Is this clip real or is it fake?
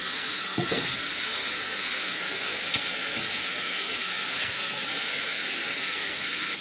fake